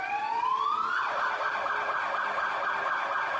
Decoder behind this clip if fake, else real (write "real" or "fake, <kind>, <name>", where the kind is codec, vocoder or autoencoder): real